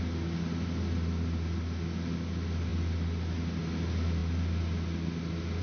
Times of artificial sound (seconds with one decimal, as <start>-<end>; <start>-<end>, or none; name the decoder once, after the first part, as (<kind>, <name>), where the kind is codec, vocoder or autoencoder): none